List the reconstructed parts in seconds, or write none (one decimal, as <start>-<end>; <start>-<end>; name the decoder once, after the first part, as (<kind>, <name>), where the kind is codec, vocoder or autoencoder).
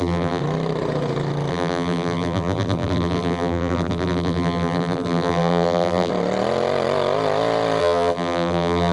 0.0-0.4 (vocoder, BigVGAN v2); 1.5-6.1; 7.8-8.9